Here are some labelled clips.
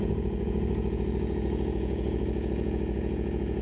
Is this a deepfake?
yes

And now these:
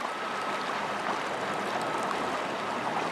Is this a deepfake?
no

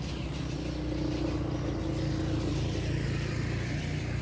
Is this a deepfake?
no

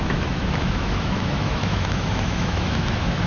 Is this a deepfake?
yes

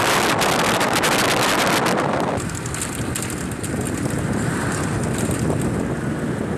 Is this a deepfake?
no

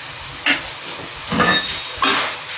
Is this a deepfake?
no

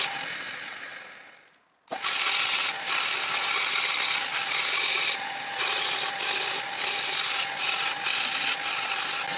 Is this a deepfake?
no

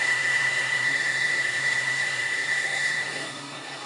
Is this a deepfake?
yes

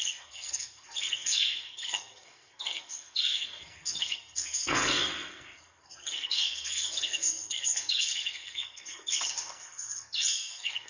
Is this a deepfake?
yes